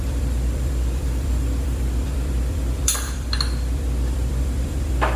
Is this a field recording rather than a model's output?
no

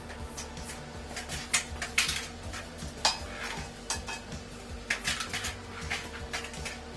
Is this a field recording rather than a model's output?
yes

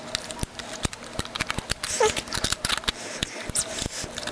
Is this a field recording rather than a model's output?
yes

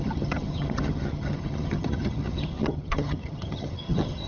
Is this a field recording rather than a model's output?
no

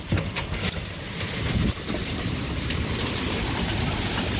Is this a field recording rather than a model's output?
no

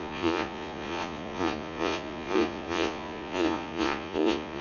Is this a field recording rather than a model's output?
no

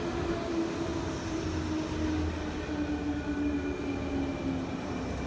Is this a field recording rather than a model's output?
yes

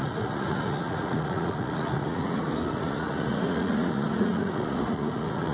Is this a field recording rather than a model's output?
no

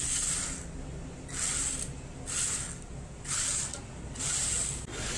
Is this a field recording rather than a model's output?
yes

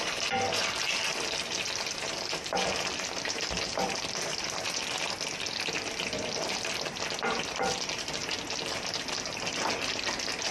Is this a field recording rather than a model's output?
yes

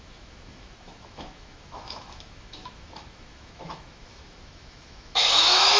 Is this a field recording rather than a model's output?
no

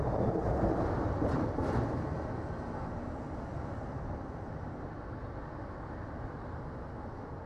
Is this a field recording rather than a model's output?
yes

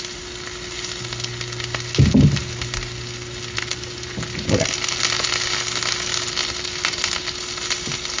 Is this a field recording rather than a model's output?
yes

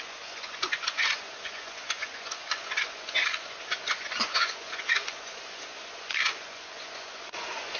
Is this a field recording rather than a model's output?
no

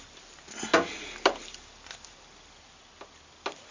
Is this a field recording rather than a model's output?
yes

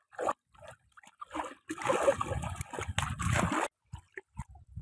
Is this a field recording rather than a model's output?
yes